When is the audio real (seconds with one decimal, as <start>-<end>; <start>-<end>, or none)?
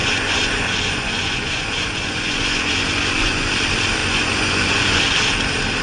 3.5-4.0; 5.0-5.8